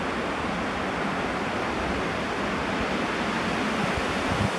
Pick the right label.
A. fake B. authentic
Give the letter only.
B